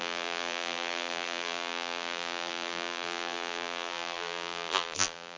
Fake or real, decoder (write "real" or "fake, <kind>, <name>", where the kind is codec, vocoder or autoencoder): fake, vocoder, BigVGAN v2